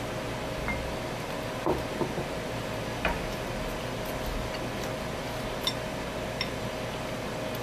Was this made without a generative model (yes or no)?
yes